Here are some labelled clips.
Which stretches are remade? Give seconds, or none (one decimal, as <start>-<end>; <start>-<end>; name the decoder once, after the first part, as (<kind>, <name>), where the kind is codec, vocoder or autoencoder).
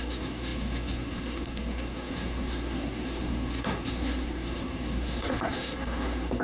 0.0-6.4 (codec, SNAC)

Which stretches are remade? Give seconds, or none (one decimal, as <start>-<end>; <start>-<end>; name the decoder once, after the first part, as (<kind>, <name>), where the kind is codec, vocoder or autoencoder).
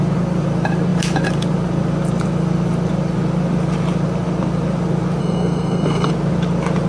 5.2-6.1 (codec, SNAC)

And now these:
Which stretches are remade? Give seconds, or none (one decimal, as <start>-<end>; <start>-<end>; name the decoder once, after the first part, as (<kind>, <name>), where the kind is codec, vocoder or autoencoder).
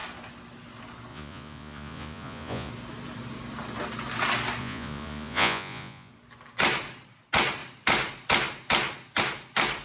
1.1-2.7 (vocoder, Vocos); 4.6-6.1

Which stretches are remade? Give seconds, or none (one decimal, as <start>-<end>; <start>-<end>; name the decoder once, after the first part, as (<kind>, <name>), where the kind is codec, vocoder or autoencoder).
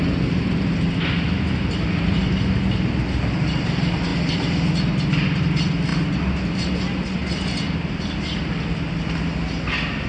none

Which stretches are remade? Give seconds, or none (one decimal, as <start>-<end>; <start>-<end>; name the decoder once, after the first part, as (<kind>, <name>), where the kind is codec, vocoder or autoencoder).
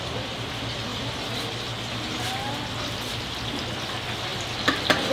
none